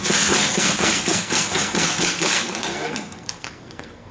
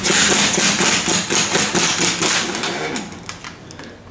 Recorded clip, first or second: second